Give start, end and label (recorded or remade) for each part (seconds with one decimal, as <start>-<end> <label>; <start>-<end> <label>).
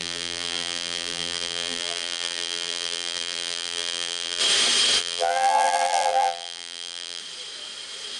0.0-4.4 remade; 4.4-5.0 recorded; 5.0-7.2 remade; 7.2-8.2 recorded